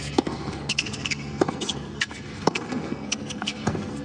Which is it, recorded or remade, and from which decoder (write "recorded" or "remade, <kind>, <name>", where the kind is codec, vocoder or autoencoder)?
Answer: remade, codec, SNAC